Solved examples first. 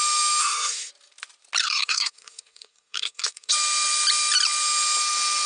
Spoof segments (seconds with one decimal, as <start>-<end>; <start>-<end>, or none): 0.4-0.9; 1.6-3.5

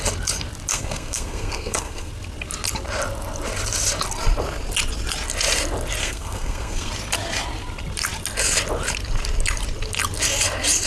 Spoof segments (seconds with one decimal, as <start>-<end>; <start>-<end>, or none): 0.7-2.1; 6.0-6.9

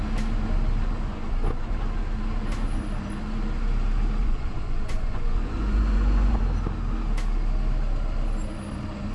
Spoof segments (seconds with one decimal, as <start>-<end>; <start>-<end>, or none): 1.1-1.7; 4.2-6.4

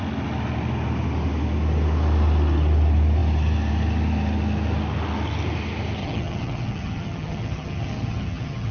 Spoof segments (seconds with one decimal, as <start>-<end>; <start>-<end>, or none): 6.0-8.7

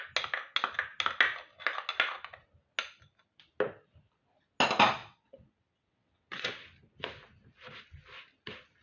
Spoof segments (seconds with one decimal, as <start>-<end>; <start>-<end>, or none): 5.0-6.6

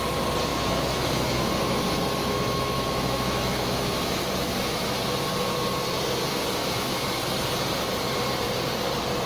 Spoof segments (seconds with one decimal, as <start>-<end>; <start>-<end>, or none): 0.5-1.5; 2.2-4.9; 6.6-7.2